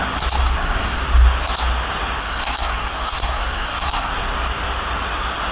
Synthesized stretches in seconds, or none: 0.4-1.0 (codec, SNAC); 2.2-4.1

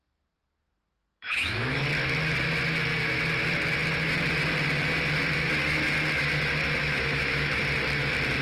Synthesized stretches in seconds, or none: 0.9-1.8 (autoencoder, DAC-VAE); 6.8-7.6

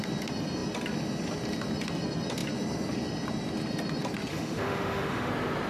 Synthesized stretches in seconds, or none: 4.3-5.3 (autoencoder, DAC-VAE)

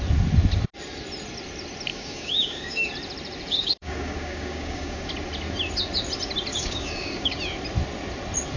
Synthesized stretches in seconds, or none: 1.9-2.9 (codec, DAC); 3.5-5.1; 6.5-7.4

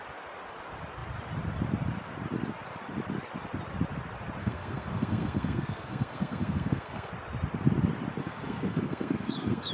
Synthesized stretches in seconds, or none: 4.4-7.1 (codec, SNAC); 8.2-9.7